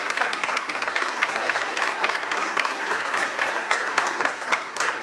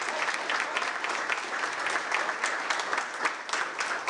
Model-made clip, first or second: first